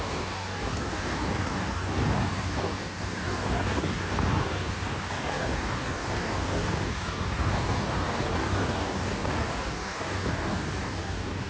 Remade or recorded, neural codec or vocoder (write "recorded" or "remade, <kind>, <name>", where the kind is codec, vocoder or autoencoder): remade, codec, DAC